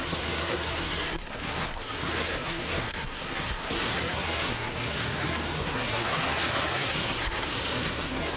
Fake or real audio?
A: fake